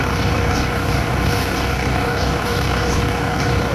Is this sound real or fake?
fake